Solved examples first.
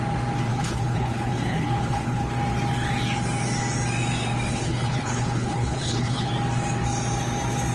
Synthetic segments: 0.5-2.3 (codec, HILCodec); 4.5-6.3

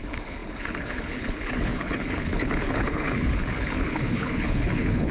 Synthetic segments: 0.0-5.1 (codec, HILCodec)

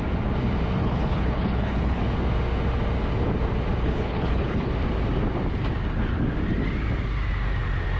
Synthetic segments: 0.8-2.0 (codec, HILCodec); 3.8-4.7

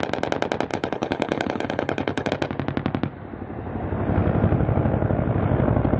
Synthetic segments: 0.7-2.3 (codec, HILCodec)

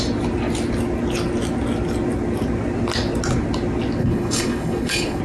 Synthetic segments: 4.0-5.2 (codec, HILCodec)